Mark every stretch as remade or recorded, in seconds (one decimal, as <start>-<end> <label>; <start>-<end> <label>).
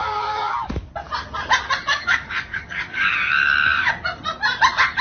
0.0-0.9 remade; 0.9-1.9 recorded; 1.9-3.9 remade; 3.9-5.0 recorded